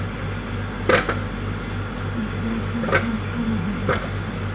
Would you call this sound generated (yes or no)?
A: no